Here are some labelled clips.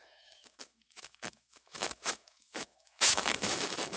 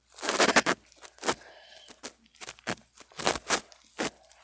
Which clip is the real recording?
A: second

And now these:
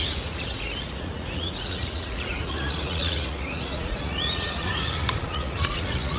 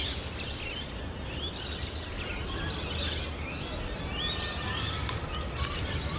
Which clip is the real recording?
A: second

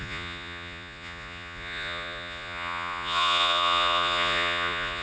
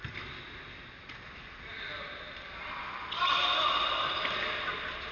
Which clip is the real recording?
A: second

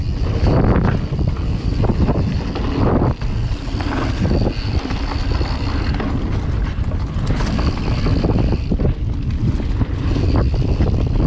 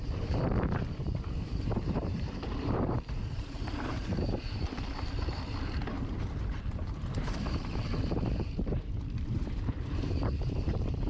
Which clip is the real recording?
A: first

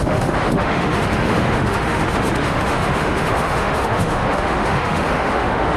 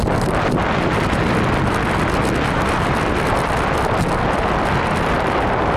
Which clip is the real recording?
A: second